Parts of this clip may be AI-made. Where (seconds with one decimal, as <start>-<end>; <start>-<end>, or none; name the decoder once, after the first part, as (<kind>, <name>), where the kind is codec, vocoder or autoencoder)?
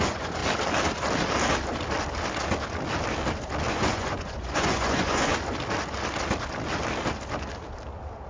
0.0-0.4 (vocoder, Vocos); 3.7-5.3